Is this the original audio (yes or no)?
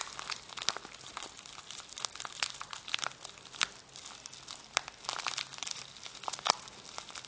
yes